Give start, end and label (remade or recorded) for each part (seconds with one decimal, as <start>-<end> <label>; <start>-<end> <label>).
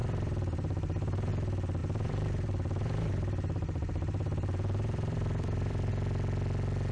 0.0-1.3 remade; 1.3-1.8 recorded; 1.8-5.9 remade; 5.9-6.9 recorded